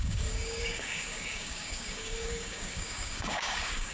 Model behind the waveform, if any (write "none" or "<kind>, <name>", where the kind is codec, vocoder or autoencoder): codec, DAC